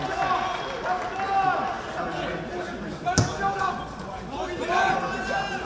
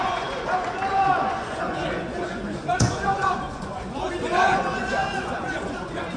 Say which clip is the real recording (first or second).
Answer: first